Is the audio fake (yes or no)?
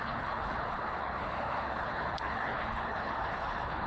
yes